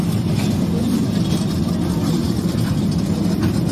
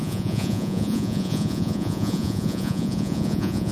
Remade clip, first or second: second